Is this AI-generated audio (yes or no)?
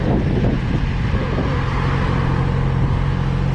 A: no